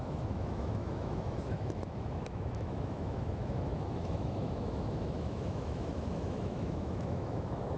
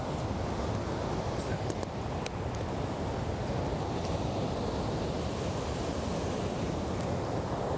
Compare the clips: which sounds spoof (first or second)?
first